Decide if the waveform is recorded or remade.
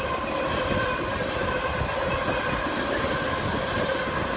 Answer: recorded